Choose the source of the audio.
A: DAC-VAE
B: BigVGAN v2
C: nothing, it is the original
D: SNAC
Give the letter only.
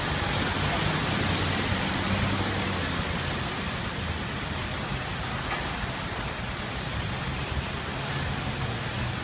C